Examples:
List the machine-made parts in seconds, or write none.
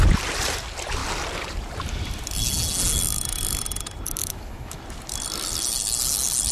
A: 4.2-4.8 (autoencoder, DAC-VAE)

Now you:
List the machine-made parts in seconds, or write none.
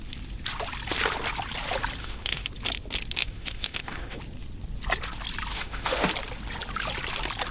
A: 2.0-2.5 (autoencoder, DAC-VAE); 3.2-4.2; 5.5-6.1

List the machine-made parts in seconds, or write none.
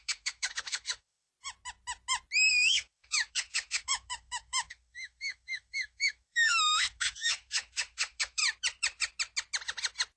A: 0.0-1.3 (autoencoder, DAC-VAE); 2.5-8.4